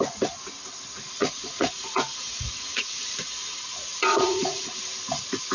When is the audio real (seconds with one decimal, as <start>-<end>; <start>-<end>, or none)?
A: 0.0-1.2; 3.6-4.1; 4.8-5.5